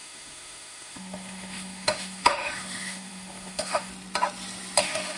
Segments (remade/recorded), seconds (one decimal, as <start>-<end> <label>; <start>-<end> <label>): 0.0-3.9 remade; 3.9-4.8 recorded; 4.8-5.2 remade